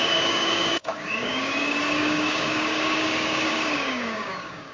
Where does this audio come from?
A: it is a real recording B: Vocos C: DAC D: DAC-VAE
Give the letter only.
C